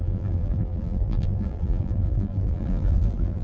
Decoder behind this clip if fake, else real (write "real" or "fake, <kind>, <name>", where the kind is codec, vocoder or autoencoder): fake, vocoder, BigVGAN v2